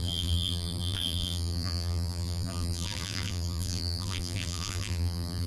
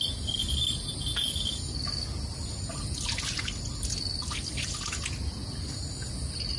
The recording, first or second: second